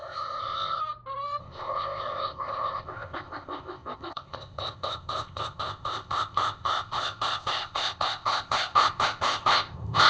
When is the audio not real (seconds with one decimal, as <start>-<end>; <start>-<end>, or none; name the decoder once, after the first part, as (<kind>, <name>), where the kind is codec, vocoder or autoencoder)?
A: 0.0-0.8 (codec, ZipCodec); 1.4-10.1